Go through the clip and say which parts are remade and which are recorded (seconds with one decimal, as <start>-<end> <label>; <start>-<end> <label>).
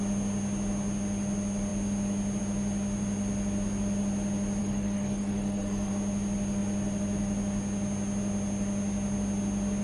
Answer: 0.0-4.6 recorded; 4.6-5.9 remade; 5.9-9.8 recorded